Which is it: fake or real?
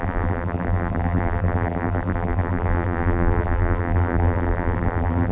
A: fake